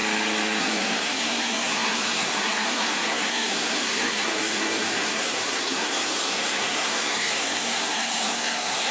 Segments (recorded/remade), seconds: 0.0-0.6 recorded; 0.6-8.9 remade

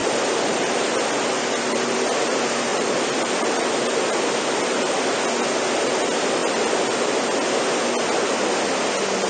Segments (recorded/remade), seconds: 0.0-2.3 remade; 2.3-2.7 recorded; 2.7-3.4 remade; 3.4-9.3 recorded

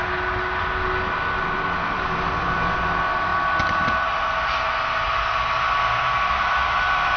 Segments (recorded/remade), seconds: 0.0-7.2 recorded

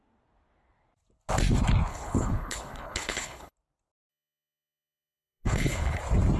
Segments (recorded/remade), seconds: 0.0-1.9 recorded; 1.9-3.5 remade; 3.5-4.1 recorded; 4.1-6.0 remade; 6.0-6.4 recorded

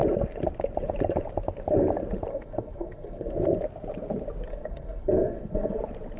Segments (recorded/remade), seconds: 0.0-2.3 recorded; 2.3-3.3 remade; 3.3-4.5 recorded; 4.5-5.8 remade; 5.8-6.2 recorded

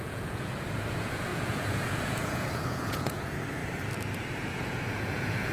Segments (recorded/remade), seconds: 0.0-3.6 remade; 3.6-4.5 recorded; 4.5-5.5 remade